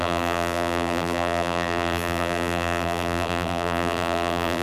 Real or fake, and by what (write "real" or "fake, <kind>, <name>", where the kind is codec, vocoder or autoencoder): fake, vocoder, BigVGAN v2